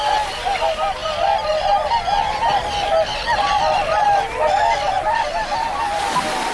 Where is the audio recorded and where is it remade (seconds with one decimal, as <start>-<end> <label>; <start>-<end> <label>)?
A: 0.0-6.5 recorded